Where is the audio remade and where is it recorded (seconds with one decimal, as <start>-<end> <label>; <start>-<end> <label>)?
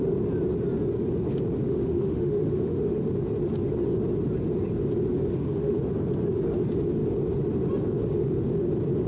0.0-1.6 recorded; 1.6-3.1 remade; 3.1-5.3 recorded; 5.3-5.8 remade; 5.8-9.1 recorded